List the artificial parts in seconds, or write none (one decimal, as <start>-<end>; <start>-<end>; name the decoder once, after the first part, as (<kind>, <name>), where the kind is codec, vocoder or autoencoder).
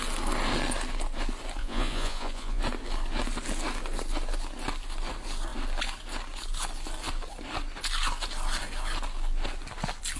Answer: 1.6-2.6 (vocoder, Vocos)